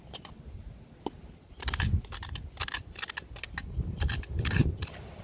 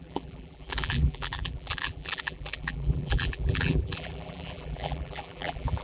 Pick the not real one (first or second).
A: second